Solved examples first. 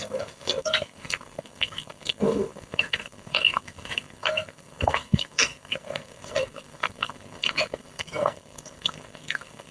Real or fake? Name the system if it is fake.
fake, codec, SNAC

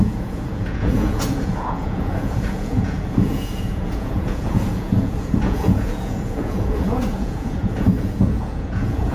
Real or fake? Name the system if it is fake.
fake, vocoder, Vocos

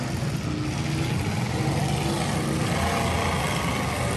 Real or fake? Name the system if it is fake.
real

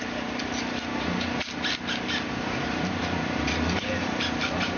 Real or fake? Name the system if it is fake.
fake, vocoder, BigVGAN v2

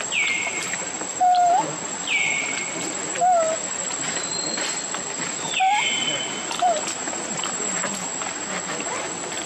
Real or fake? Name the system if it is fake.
real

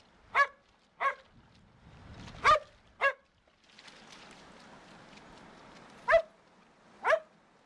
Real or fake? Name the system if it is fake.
real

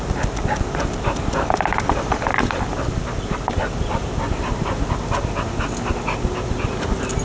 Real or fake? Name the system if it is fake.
real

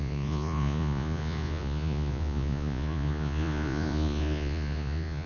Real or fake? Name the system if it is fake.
fake, vocoder, Vocos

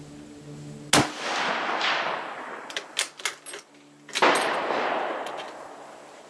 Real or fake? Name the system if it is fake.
real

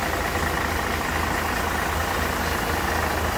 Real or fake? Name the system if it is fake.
real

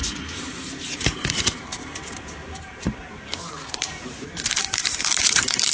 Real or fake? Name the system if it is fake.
fake, vocoder, BigVGAN v2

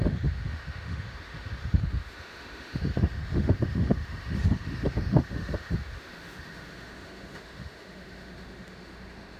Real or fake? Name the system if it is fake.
fake, autoencoder, DAC-VAE